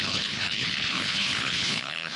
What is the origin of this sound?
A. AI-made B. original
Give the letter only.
A